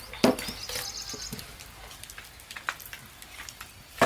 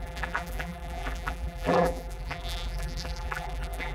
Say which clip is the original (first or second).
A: first